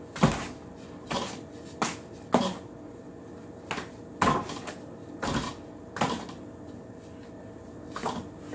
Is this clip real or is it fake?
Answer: real